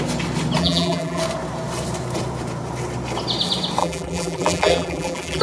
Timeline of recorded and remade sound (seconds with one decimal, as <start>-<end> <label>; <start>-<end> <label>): 0.0-0.6 recorded; 0.6-1.2 remade; 1.2-3.8 recorded; 3.8-5.4 remade